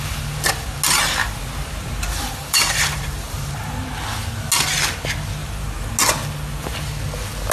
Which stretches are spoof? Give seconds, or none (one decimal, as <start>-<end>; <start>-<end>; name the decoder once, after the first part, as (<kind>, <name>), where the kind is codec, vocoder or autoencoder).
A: 1.2-3.8 (vocoder, BigVGAN v2); 5.4-5.9

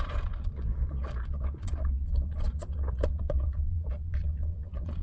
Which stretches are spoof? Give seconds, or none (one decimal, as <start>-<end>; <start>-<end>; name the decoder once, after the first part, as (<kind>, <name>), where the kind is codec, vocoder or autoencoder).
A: 0.0-5.0 (vocoder, Vocos)